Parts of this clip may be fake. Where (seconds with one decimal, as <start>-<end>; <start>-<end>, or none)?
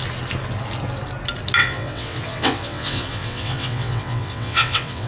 1.6-5.1